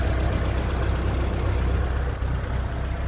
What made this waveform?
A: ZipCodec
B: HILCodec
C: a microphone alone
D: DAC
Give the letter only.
C